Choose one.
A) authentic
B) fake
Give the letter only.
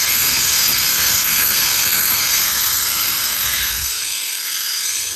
B